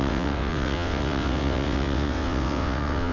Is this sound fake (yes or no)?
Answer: yes